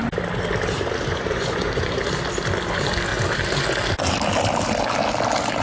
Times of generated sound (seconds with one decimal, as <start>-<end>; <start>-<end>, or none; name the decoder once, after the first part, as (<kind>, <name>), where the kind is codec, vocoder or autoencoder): 1.1-2.0 (vocoder, Vocos)